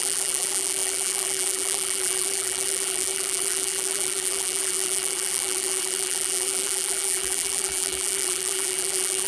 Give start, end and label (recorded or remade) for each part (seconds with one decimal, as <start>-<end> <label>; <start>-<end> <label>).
0.0-9.3 remade